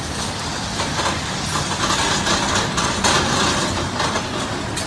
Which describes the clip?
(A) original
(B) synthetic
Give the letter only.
A